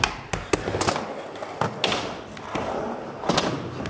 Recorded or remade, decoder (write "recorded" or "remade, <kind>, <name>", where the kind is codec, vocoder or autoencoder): recorded